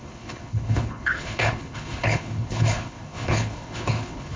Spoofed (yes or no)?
yes